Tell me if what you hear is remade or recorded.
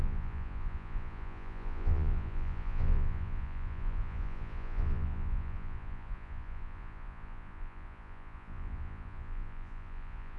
remade